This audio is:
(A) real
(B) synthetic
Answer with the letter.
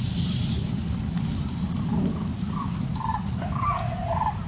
B